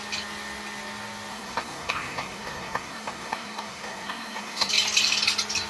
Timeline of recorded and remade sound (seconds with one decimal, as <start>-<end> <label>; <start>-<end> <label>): 0.0-1.3 recorded; 1.3-4.7 remade; 4.7-5.7 recorded